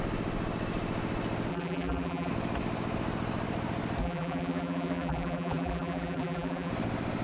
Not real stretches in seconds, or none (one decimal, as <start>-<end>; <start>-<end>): 1.5-2.3; 4.0-6.7

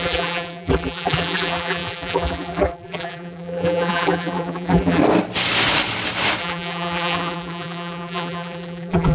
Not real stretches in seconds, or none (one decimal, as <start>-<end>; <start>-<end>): 0.0-5.0; 6.4-9.1